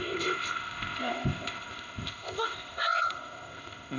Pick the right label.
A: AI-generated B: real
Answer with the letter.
A